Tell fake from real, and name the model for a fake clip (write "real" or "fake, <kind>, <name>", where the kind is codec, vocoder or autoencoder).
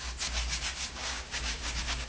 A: fake, codec, DAC